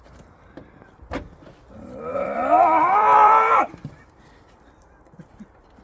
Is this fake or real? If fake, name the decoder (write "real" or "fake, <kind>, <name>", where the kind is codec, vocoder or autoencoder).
fake, vocoder, BigVGAN v2